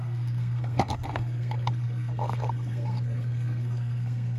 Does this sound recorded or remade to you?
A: remade